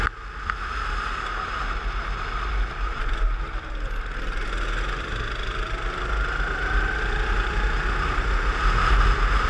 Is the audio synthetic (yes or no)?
no